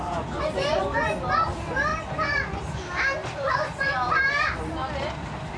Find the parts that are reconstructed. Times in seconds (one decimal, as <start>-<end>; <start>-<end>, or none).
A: 3.2-4.2